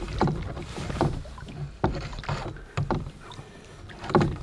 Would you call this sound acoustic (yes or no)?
yes